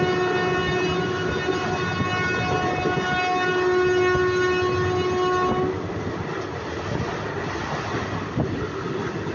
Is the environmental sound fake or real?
real